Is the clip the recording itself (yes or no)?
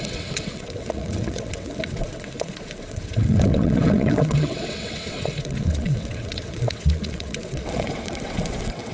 no